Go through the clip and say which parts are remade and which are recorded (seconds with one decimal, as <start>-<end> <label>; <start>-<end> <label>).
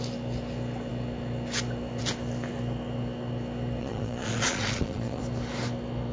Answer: 0.0-3.8 recorded; 3.8-5.2 remade; 5.2-6.1 recorded